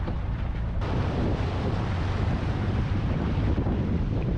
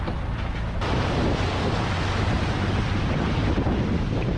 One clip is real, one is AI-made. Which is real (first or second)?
second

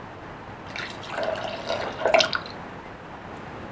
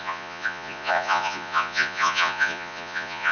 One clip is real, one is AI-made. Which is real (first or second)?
first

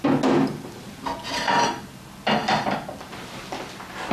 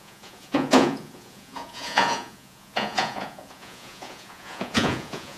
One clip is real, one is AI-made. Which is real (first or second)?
first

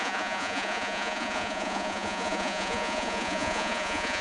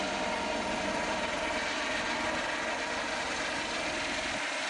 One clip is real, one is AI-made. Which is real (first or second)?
second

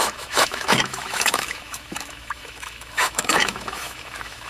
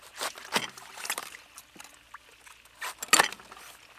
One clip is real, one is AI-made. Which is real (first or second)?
second